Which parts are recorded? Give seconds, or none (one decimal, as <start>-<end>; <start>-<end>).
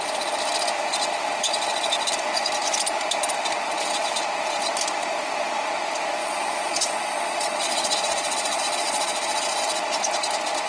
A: 0.0-6.2; 9.6-10.7